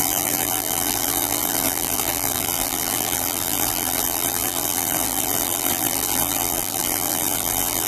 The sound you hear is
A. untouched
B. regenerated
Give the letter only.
B